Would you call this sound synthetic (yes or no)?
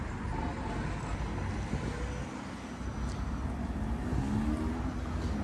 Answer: no